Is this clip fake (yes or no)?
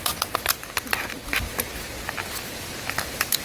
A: no